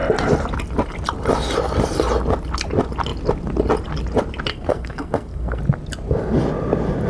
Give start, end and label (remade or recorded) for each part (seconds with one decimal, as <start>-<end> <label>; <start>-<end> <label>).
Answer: 0.0-4.5 recorded; 4.5-5.6 remade; 5.6-7.1 recorded